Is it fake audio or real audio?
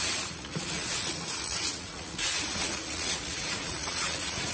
fake